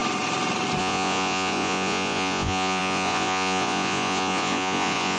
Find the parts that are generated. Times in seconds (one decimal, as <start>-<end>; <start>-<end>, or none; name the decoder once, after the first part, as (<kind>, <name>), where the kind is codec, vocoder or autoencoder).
0.8-5.2 (vocoder, Vocos)